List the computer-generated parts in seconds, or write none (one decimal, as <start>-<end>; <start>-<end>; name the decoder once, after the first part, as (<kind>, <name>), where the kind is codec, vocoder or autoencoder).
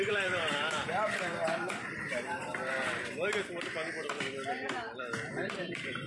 0.0-2.5 (vocoder, BigVGAN v2); 5.0-6.1